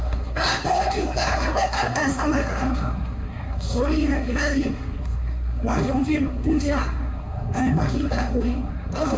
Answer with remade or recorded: remade